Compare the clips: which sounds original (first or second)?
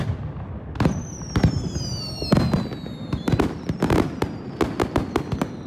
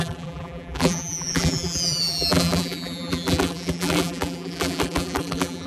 first